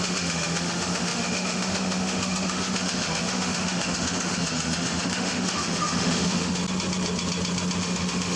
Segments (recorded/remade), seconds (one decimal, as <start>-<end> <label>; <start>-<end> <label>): 0.0-6.6 remade; 6.6-7.8 recorded; 7.8-8.4 remade